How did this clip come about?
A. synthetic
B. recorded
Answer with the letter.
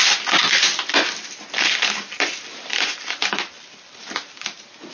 B